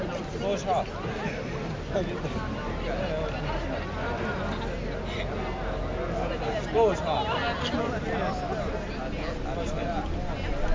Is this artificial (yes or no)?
no